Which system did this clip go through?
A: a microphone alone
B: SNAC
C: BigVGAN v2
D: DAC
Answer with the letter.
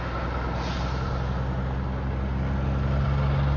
A